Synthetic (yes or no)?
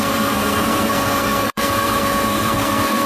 yes